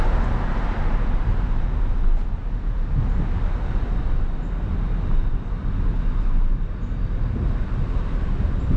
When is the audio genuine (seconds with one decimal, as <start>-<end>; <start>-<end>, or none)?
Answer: 0.0-8.8